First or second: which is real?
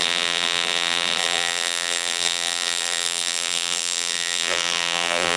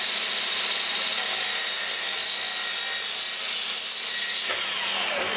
second